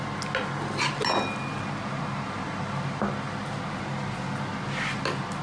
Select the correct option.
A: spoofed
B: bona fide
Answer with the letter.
B